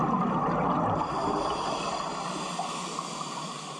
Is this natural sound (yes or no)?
yes